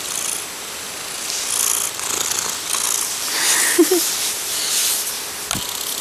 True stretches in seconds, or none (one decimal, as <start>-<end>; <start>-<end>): 0.0-6.0